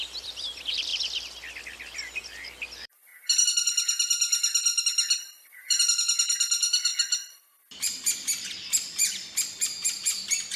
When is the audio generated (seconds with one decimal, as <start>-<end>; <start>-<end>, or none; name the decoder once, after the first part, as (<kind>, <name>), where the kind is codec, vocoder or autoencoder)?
0.0-3.1 (vocoder, BigVGAN v2); 4.8-10.6